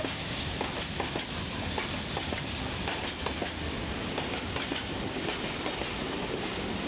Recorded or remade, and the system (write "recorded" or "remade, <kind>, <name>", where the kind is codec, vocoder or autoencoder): recorded